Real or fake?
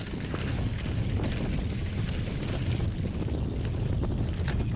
real